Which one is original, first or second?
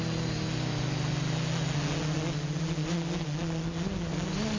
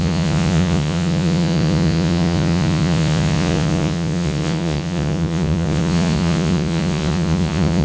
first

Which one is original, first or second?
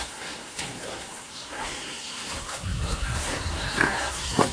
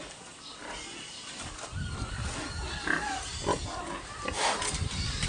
second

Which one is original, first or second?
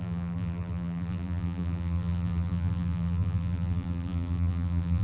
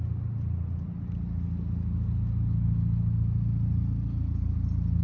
second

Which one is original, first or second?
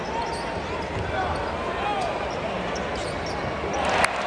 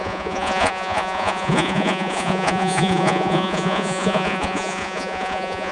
first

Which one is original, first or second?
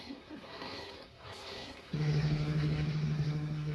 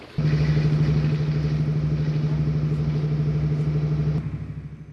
second